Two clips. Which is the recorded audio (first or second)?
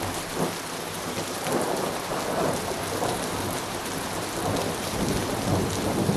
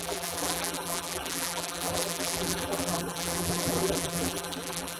first